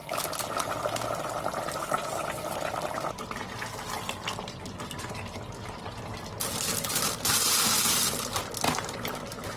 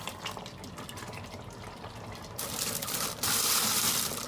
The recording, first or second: first